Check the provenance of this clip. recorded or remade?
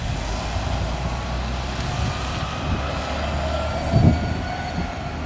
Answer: recorded